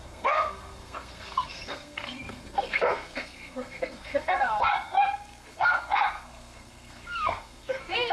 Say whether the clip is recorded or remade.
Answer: remade